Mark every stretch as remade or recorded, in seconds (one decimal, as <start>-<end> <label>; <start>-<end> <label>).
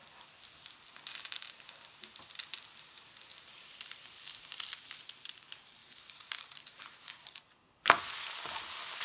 0.0-3.3 recorded; 3.3-4.6 remade; 4.6-5.8 recorded; 5.8-7.4 remade; 7.4-9.0 recorded